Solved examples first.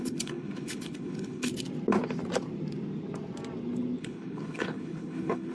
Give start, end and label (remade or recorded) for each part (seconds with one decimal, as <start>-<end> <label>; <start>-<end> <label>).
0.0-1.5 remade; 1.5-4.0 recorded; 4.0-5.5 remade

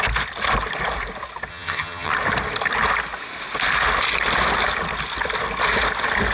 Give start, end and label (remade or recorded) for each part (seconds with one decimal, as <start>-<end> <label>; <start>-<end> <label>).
0.0-1.5 recorded; 1.5-2.1 remade; 2.1-6.3 recorded

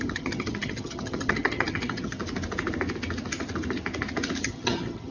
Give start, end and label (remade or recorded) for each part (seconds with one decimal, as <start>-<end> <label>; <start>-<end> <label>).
0.0-2.2 remade; 2.2-4.4 recorded; 4.4-5.1 remade

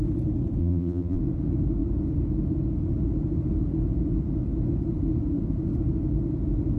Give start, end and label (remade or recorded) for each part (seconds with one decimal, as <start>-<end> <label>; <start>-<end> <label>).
0.0-0.6 recorded; 0.6-1.2 remade; 1.2-6.8 recorded

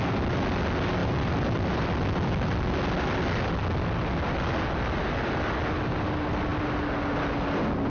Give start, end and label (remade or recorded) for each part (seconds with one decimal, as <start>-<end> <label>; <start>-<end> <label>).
0.0-1.0 recorded; 1.0-2.6 remade; 2.6-7.9 recorded

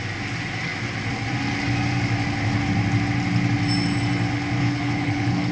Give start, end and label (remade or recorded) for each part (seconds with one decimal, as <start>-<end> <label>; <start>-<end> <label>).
0.0-4.6 recorded; 4.6-5.5 remade

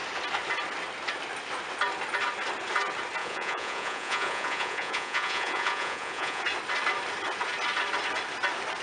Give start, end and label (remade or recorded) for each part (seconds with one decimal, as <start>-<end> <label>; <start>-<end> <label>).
0.0-3.2 recorded; 3.2-6.4 remade; 6.4-8.8 recorded